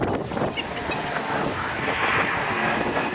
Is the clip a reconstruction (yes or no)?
no